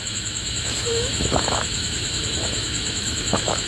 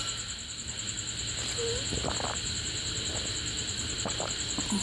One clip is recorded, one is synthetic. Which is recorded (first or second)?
second